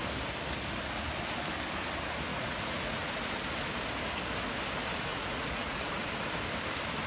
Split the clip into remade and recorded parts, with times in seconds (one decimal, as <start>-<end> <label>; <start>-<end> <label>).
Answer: 0.0-2.3 recorded; 2.3-3.1 remade; 3.1-5.1 recorded; 5.1-6.1 remade; 6.1-7.1 recorded

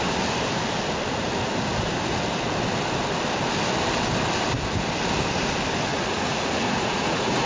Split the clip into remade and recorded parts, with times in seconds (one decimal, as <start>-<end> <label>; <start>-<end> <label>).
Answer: 0.0-5.9 recorded; 5.9-7.5 remade

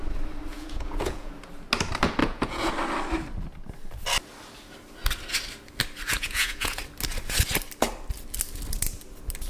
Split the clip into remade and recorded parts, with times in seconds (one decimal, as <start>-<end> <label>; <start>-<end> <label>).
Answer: 0.0-0.5 recorded; 0.5-1.3 remade; 1.3-2.2 recorded; 2.2-2.7 remade; 2.7-6.1 recorded; 6.1-6.8 remade; 6.8-9.5 recorded

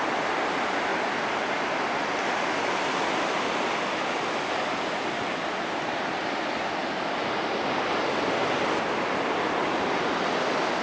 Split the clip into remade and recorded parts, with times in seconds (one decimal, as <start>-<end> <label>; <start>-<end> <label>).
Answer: 0.0-10.8 recorded

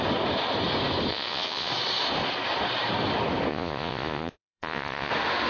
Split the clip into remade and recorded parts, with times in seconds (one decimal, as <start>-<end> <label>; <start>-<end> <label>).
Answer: 0.0-1.1 recorded; 1.1-1.7 remade; 1.7-3.5 recorded; 3.5-5.1 remade; 5.1-5.5 recorded

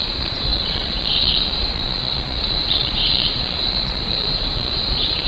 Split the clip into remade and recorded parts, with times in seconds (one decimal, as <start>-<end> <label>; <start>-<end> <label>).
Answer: 0.0-5.3 remade

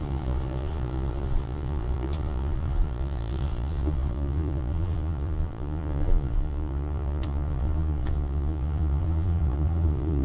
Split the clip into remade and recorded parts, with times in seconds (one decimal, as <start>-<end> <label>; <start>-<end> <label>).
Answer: 0.0-10.2 remade

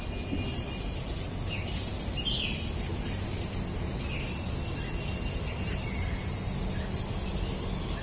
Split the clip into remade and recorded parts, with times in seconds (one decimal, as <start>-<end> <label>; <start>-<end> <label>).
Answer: 0.0-8.0 recorded